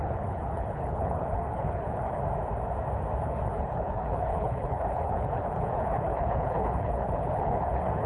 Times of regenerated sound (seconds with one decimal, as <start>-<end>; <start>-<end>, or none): 0.0-2.2; 3.2-8.1